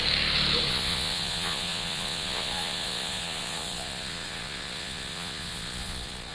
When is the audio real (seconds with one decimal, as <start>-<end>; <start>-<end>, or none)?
0.0-0.7